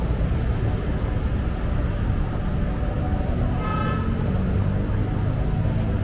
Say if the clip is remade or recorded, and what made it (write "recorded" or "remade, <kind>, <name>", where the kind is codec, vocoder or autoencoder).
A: recorded